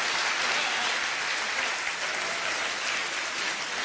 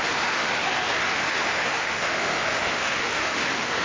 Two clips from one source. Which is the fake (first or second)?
second